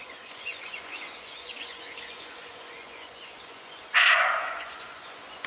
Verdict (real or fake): fake